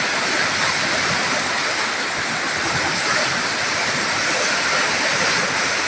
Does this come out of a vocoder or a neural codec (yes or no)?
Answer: no